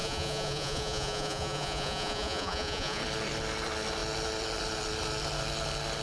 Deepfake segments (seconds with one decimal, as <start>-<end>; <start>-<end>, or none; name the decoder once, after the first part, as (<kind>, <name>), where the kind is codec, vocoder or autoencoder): 0.0-3.0 (vocoder, Vocos)